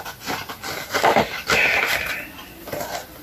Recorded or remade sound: recorded